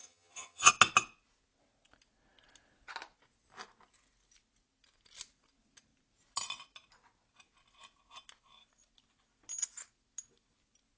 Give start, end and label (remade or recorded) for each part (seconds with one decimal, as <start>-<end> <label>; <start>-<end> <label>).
0.0-0.7 remade; 0.7-11.0 recorded

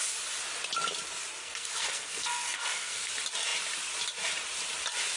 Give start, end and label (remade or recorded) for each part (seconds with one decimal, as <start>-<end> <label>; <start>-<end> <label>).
0.0-1.4 recorded; 1.4-3.1 remade; 3.1-5.2 recorded

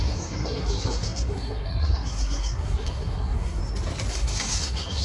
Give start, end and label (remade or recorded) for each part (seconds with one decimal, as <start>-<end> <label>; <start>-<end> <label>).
0.0-3.6 remade; 3.6-4.1 recorded; 4.1-5.0 remade

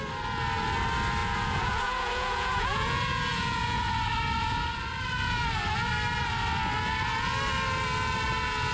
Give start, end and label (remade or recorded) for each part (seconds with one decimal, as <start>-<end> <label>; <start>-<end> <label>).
0.0-1.2 recorded; 1.2-3.8 remade; 3.8-8.7 recorded

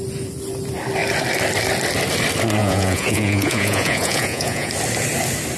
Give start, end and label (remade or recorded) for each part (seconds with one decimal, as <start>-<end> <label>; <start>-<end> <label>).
0.0-2.6 recorded; 2.6-4.7 remade; 4.7-5.6 recorded

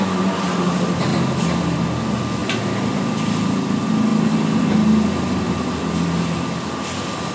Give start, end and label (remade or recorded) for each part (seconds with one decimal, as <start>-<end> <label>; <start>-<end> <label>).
0.0-7.3 recorded